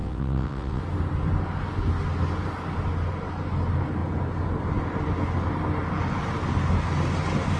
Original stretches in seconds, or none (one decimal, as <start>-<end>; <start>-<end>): 0.8-7.6